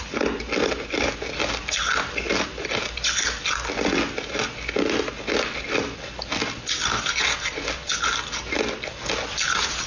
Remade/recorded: recorded